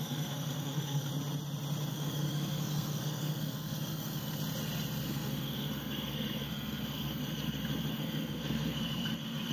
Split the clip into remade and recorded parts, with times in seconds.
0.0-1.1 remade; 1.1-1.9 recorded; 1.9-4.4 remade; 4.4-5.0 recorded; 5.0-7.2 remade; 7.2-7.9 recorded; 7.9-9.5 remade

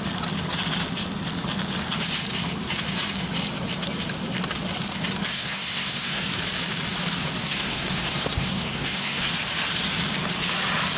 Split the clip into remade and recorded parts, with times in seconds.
0.0-5.3 recorded; 5.3-6.2 remade; 6.2-7.4 recorded; 7.4-9.3 remade; 9.3-11.0 recorded

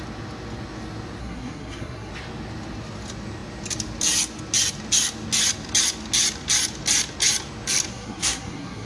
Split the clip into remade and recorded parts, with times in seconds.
0.0-1.2 recorded; 1.2-2.1 remade; 2.1-7.9 recorded; 7.9-8.9 remade

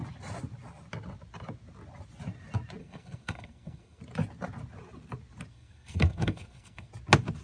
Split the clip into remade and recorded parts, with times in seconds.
0.0-2.8 recorded; 2.8-4.0 remade; 4.0-5.5 recorded; 5.5-6.9 remade; 6.9-7.4 recorded

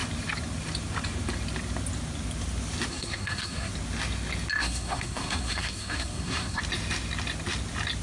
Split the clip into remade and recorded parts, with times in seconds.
0.0-2.9 recorded; 2.9-3.7 remade; 3.7-4.6 recorded; 4.6-6.6 remade; 6.6-8.0 recorded

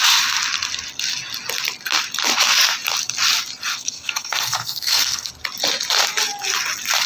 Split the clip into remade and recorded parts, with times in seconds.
0.0-3.7 recorded; 3.7-5.3 remade; 5.3-7.1 recorded